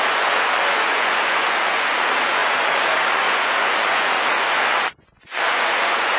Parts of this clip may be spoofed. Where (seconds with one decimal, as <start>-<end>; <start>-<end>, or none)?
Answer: 0.0-6.2